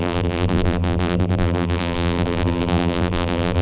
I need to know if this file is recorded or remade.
remade